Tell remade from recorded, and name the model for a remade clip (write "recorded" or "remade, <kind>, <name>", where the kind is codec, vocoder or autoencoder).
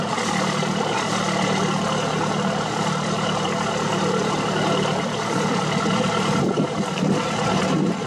recorded